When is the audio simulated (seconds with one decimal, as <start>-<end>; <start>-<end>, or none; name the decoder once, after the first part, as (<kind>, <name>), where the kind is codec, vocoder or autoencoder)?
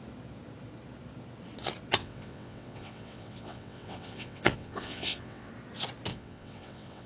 2.0-5.5 (vocoder, WaveNeXt); 6.1-7.1